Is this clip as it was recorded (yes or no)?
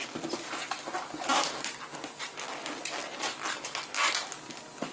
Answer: yes